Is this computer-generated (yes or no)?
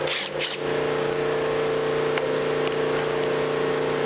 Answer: no